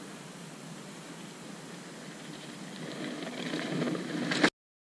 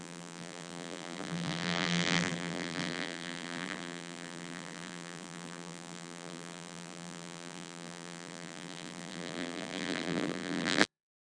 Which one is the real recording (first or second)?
first